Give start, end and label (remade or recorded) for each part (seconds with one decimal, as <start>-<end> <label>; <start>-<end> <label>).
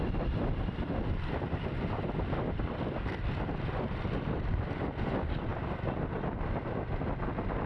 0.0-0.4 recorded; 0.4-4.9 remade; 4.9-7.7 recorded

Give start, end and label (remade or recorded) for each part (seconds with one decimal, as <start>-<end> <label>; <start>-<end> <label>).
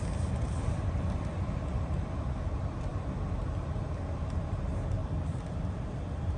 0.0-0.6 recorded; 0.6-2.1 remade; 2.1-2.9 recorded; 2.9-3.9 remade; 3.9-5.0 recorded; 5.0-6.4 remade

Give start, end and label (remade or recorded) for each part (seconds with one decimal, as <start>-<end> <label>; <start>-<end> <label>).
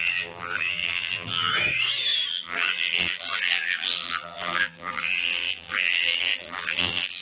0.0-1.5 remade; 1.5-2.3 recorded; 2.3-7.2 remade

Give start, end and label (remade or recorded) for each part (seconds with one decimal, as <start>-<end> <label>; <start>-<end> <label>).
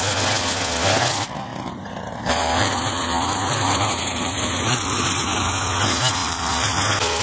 0.0-1.5 recorded; 1.5-5.5 remade; 5.5-6.2 recorded; 6.2-6.8 remade; 6.8-7.2 recorded